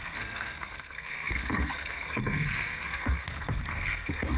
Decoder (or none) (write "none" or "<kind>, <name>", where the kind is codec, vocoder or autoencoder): codec, SNAC